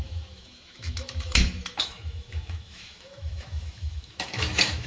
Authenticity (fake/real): fake